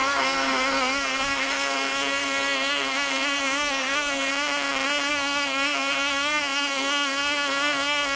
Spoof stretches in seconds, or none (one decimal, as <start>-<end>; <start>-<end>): 0.0-4.3; 5.1-8.2